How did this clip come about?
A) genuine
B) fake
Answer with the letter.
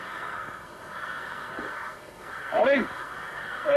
B